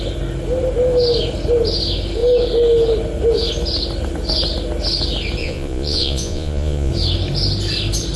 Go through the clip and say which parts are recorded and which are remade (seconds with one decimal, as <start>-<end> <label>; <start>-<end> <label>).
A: 0.0-5.4 recorded; 5.4-6.9 remade; 6.9-8.2 recorded